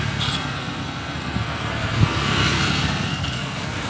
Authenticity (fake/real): fake